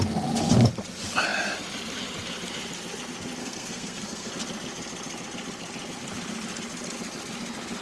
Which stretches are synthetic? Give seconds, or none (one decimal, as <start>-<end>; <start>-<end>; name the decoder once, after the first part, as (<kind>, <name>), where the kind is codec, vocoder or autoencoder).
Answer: 3.4-4.3 (codec, SNAC)

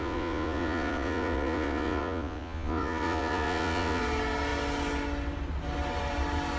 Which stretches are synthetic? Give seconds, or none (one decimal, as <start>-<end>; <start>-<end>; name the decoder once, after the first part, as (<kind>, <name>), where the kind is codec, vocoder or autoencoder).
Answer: 0.0-4.0 (vocoder, Vocos)

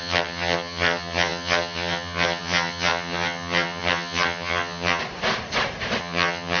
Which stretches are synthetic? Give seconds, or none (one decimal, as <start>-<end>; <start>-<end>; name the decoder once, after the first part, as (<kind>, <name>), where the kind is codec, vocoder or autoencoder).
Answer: 0.0-5.0 (vocoder, HiFi-GAN); 6.0-6.6

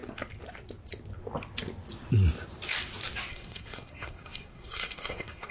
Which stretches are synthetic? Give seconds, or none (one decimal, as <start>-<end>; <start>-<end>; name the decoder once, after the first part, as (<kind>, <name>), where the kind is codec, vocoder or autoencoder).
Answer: 3.3-5.5 (codec, SNAC)

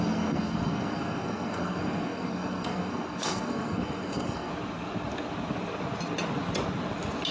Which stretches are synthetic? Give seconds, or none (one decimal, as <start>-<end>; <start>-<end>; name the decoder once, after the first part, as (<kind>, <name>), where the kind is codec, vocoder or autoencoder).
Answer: 0.0-4.5 (codec, SNAC)

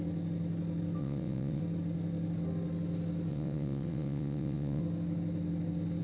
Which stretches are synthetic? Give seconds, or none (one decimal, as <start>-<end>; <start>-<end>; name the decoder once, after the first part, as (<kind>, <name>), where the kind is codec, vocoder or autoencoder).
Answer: 1.0-1.6 (vocoder, WaveNeXt); 3.3-4.8

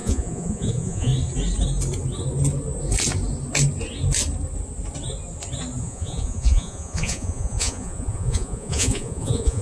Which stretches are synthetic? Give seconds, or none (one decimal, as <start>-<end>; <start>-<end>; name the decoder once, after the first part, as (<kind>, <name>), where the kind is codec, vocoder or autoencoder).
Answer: 0.0-1.1 (vocoder, Vocos); 5.8-9.6

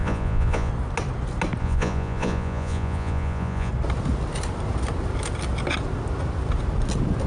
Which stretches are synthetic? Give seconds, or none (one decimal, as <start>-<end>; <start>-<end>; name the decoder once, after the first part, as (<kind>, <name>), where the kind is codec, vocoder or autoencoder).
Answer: 0.0-0.7 (vocoder, Vocos); 1.6-3.7